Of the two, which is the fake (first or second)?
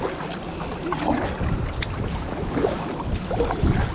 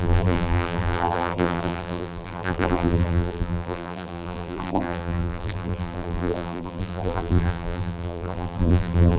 second